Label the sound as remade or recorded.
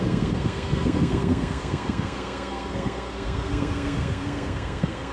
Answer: remade